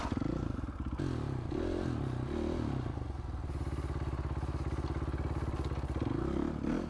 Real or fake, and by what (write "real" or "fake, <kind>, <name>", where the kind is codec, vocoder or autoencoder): real